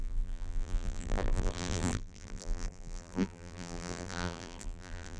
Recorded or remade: remade